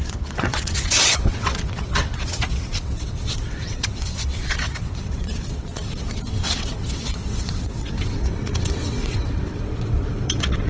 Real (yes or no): no